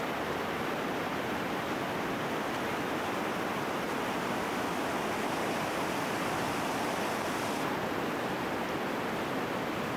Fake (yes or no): no